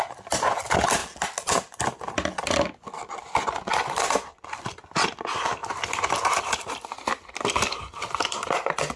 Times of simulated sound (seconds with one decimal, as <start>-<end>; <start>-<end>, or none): none

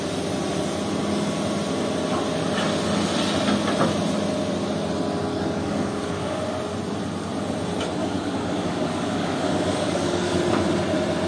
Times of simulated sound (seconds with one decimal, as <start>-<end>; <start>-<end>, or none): 5.3-6.4; 8.0-10.4